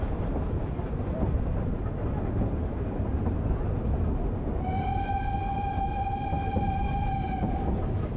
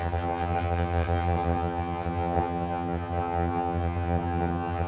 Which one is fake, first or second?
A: second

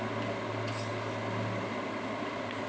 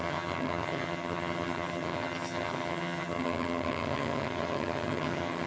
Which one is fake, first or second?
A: second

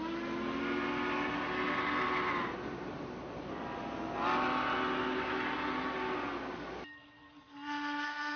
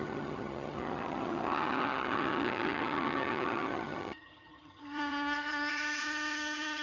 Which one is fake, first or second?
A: second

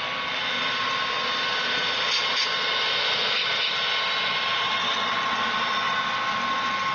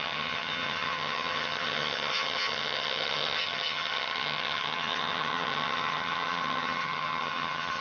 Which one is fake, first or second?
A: second